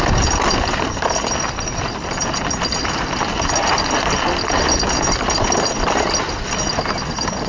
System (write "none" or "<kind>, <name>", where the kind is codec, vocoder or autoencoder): none